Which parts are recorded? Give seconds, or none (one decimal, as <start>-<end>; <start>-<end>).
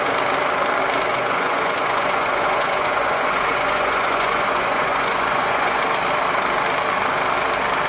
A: 0.0-1.1; 5.8-7.9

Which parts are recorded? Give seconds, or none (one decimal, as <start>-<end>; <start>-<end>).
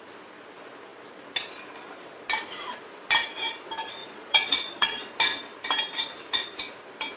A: 0.0-4.0; 5.1-7.2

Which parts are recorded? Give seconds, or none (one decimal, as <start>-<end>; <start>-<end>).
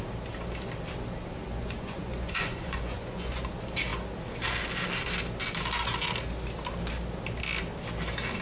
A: 0.0-1.6; 3.5-8.4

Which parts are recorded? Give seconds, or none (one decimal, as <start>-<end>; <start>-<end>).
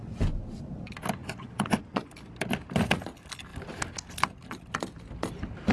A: 0.0-1.2; 2.1-5.7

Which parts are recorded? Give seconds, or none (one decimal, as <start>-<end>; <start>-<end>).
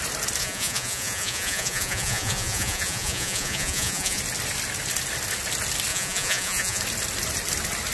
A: 0.0-0.4; 4.2-5.9; 6.8-7.9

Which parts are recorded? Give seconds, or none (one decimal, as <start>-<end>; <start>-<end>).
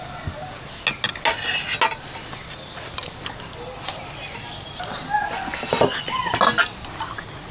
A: 0.0-7.5